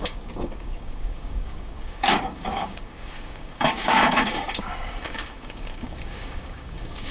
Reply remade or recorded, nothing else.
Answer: remade